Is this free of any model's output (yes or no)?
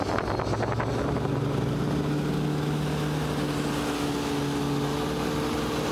yes